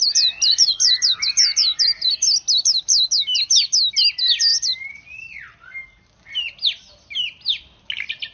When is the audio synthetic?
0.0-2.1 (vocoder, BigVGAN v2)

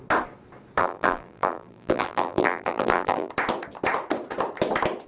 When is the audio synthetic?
0.8-3.3 (vocoder, BigVGAN v2)

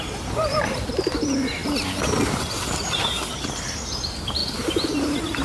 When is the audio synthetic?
0.0-1.6 (vocoder, BigVGAN v2); 3.7-4.4; 4.9-5.4

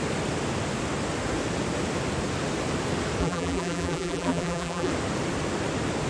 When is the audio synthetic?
3.2-4.9 (vocoder, BigVGAN v2)

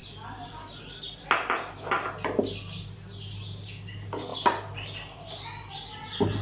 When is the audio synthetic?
none

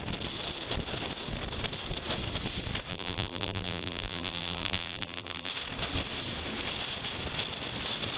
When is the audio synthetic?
2.9-5.5 (vocoder, BigVGAN v2)

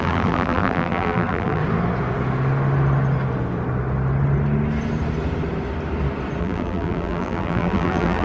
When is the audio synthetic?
0.0-1.6 (vocoder, BigVGAN v2); 6.4-8.2

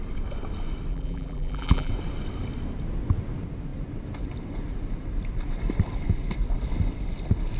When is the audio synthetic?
0.9-1.9 (vocoder, BigVGAN v2)